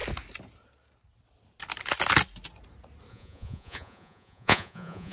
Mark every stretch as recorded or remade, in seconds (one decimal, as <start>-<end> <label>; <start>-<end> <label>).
0.0-3.1 recorded; 3.1-5.1 remade